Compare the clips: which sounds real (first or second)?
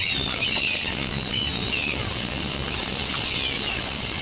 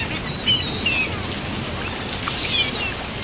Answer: second